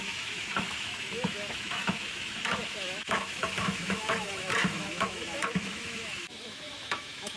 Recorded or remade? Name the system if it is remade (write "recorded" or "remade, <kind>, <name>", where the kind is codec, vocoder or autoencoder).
remade, autoencoder, DAC-VAE